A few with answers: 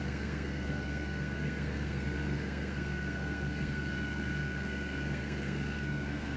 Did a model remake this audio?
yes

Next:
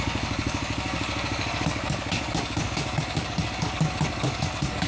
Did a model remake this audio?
yes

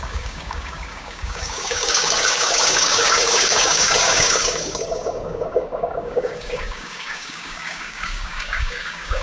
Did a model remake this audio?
yes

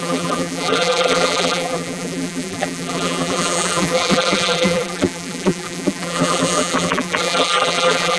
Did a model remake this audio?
yes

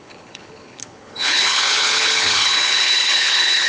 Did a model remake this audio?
yes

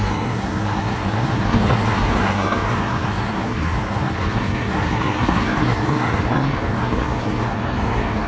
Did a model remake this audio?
yes